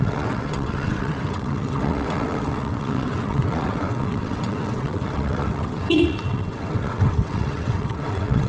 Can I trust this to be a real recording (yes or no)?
no